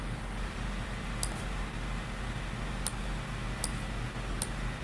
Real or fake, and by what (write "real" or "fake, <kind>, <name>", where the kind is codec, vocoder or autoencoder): real